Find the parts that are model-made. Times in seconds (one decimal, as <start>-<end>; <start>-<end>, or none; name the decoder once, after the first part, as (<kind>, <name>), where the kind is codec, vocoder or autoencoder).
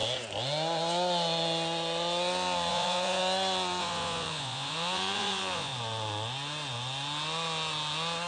2.7-3.2 (vocoder, Vocos); 3.8-5.7